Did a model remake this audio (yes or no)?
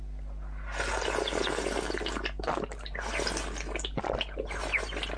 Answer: no